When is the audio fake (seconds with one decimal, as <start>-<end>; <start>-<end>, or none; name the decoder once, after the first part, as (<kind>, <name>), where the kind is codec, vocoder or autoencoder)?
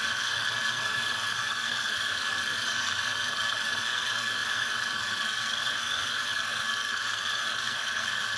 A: 0.0-8.4 (codec, SNAC)